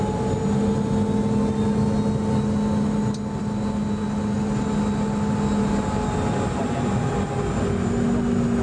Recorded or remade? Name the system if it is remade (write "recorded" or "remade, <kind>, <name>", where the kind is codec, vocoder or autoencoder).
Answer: recorded